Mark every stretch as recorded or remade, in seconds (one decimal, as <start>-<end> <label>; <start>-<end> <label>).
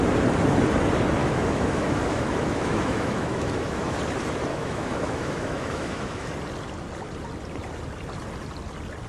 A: 0.0-1.2 recorded; 1.2-4.0 remade; 4.0-4.5 recorded; 4.5-6.3 remade; 6.3-9.1 recorded